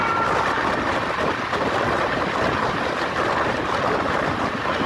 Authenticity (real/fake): real